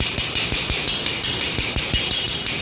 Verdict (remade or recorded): recorded